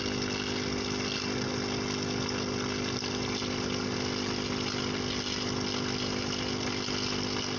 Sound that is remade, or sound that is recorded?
recorded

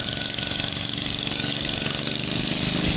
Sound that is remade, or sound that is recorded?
remade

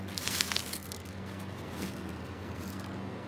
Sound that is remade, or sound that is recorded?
remade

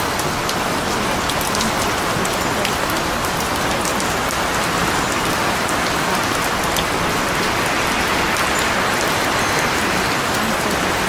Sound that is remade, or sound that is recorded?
recorded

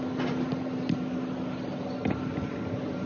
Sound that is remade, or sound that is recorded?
recorded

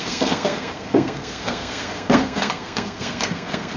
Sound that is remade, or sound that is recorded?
remade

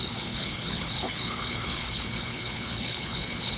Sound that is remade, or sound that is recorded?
remade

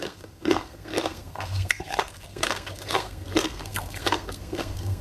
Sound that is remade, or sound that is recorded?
remade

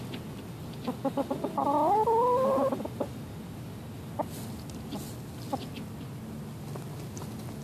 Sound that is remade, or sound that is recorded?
recorded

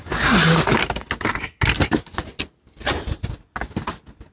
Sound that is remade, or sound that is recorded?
recorded